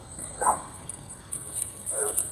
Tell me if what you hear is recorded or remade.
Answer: remade